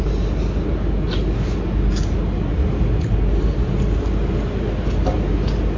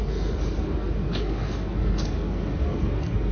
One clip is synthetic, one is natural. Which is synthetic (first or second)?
second